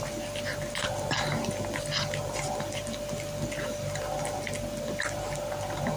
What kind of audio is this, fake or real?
real